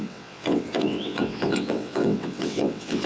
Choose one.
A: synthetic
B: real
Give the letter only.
A